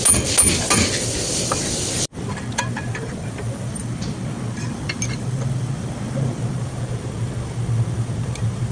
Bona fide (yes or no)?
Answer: yes